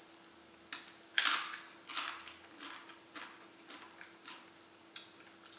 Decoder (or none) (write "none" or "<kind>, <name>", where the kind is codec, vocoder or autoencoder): none